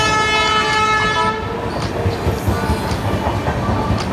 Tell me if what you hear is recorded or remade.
recorded